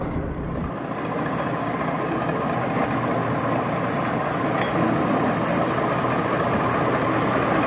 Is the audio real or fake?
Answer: real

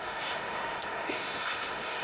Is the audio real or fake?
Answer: fake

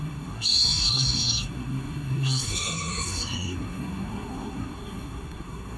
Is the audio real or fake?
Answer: fake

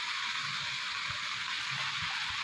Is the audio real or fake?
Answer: real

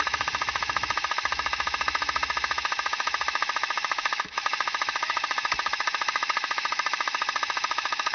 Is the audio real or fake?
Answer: fake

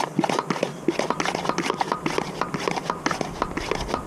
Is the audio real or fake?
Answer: real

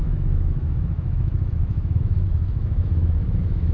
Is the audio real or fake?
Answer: fake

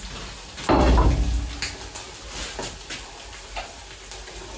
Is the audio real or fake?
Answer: real